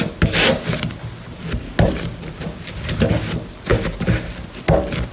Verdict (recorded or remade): recorded